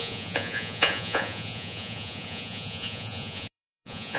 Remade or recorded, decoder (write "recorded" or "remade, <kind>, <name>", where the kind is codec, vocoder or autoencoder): remade, vocoder, Vocos